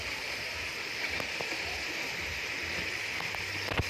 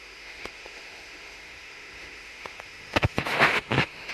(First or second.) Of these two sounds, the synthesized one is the second